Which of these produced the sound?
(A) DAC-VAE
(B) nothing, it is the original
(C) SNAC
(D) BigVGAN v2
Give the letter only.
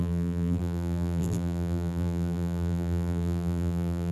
D